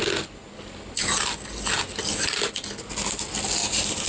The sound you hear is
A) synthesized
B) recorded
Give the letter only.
B